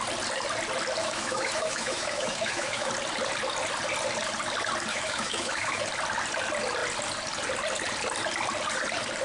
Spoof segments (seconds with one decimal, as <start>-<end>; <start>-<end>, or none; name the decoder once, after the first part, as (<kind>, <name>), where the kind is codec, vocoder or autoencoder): 1.0-2.9 (autoencoder, DAC-VAE); 4.9-5.8